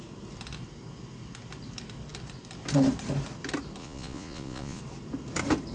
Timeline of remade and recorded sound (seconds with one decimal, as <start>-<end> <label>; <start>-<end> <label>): 0.0-3.8 recorded; 3.8-4.8 remade; 4.8-5.7 recorded